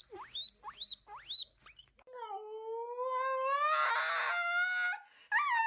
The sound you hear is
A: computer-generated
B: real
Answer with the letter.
B